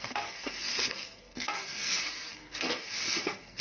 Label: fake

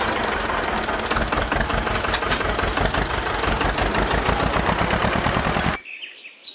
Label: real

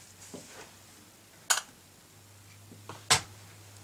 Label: real